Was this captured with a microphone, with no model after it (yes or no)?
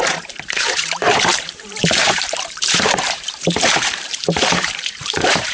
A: no